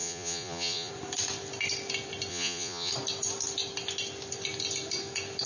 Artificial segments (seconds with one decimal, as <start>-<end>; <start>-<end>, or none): 0.0-0.9; 2.3-2.9